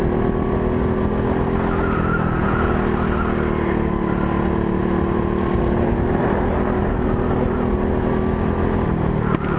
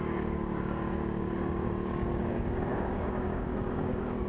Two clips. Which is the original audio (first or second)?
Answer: first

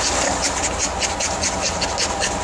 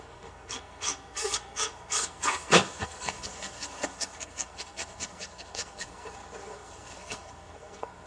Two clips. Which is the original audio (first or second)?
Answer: first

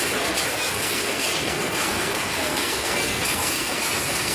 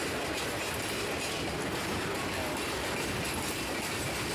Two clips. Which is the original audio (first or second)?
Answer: second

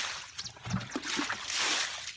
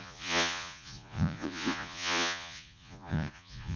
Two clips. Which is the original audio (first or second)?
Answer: first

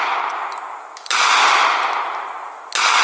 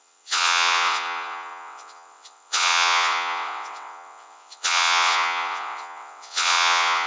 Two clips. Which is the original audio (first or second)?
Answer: first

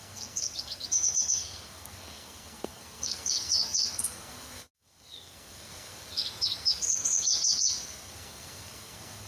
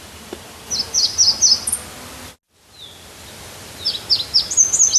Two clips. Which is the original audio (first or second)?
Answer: second